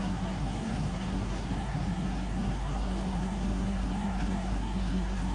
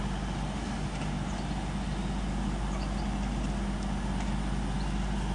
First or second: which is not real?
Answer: first